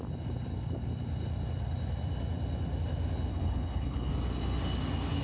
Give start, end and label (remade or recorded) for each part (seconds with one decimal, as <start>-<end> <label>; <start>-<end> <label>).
0.0-3.3 recorded; 3.3-4.1 remade; 4.1-5.2 recorded